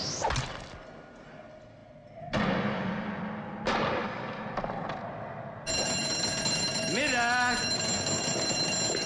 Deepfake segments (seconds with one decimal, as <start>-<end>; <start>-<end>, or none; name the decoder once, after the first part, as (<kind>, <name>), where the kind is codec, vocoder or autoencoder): none